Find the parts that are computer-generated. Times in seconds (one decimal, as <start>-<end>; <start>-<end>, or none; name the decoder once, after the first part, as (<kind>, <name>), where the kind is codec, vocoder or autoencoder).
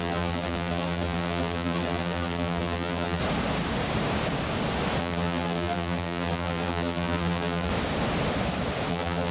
0.0-3.2 (vocoder, BigVGAN v2); 5.0-7.7; 8.9-9.3